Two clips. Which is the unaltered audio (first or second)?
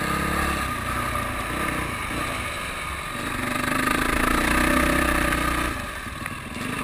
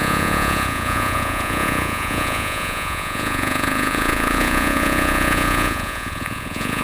first